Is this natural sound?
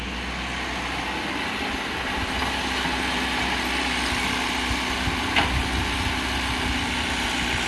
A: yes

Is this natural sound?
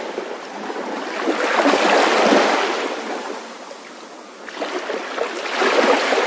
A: yes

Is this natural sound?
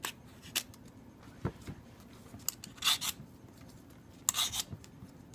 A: yes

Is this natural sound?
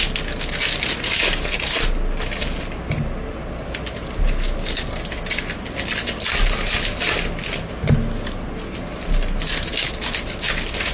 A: yes